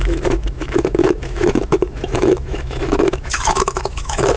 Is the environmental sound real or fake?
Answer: fake